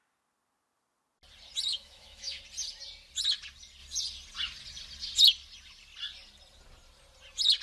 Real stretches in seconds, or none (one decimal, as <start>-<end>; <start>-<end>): 0.0-1.7; 2.4-7.6